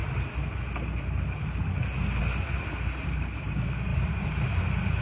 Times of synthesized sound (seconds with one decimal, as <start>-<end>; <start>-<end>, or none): 3.9-4.6